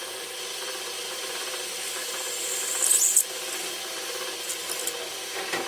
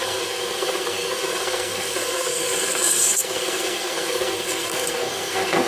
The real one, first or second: first